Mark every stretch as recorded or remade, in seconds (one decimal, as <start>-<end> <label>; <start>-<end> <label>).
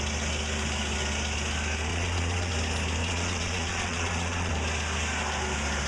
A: 0.0-1.9 recorded; 1.9-2.5 remade; 2.5-3.0 recorded; 3.0-4.5 remade; 4.5-5.9 recorded